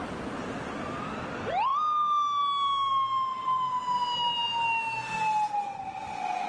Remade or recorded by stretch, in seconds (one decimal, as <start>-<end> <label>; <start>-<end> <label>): 0.0-3.3 recorded; 3.3-3.8 remade; 3.8-6.5 recorded